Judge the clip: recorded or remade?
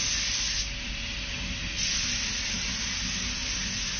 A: recorded